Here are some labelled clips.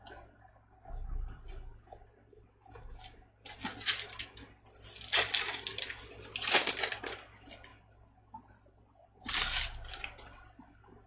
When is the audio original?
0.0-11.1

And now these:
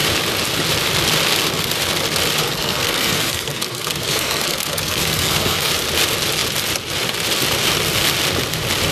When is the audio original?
0.0-2.4; 5.7-8.9

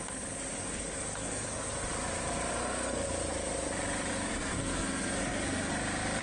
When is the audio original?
0.0-0.6; 1.7-2.6; 3.1-4.1; 5.7-6.2

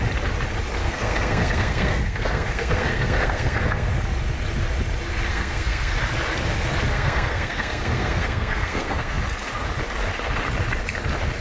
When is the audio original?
0.0-0.8; 3.9-5.3; 5.9-6.9; 9.2-11.4

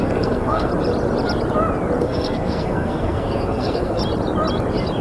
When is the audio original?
0.7-2.0; 4.0-5.0

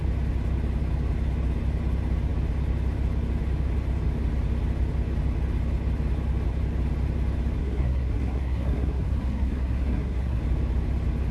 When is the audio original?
0.0-7.6; 10.4-11.3

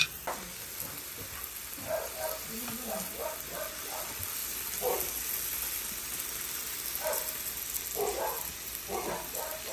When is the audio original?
0.0-9.7

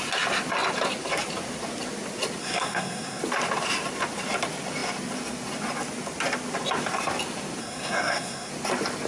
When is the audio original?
0.0-2.4; 3.2-7.6; 8.5-9.1